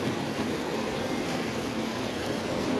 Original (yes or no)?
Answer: no